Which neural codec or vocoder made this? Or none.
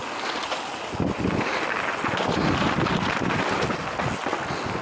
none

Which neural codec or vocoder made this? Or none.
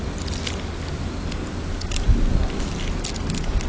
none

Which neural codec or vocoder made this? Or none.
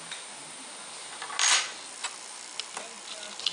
none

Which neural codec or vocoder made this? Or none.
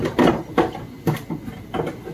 none